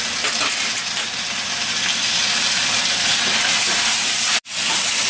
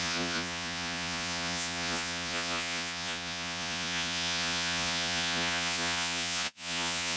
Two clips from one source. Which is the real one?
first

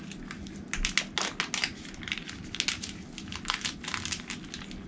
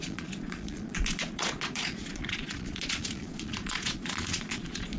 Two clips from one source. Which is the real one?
first